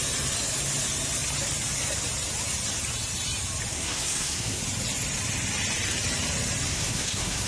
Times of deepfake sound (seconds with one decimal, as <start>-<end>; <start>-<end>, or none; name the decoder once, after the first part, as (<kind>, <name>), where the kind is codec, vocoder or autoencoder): 3.7-4.6 (codec, SNAC); 6.7-7.5